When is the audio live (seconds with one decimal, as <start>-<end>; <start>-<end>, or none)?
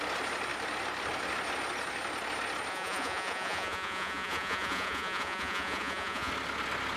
0.0-2.7; 6.3-7.0